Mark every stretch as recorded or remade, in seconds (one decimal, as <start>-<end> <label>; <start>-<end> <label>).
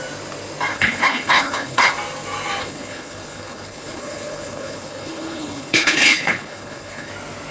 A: 0.0-0.7 recorded; 0.7-1.9 remade; 1.9-2.6 recorded; 2.6-7.1 remade; 7.1-7.5 recorded